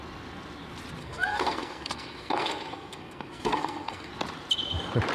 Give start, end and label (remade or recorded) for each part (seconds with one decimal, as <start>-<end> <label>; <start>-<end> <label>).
0.0-1.0 recorded; 1.0-4.1 remade; 4.1-5.1 recorded